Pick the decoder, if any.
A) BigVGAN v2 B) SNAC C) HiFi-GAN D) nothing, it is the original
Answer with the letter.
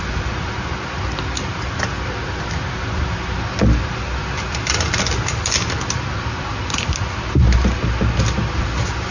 D